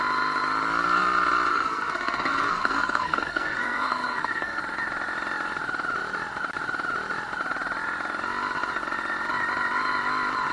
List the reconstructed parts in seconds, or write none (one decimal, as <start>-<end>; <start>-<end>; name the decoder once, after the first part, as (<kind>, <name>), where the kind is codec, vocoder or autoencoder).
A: 1.5-4.6 (codec, SNAC)